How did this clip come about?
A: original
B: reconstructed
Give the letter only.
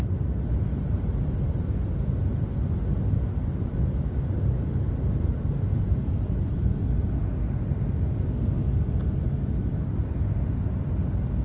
A